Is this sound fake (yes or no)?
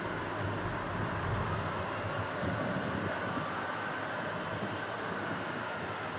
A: no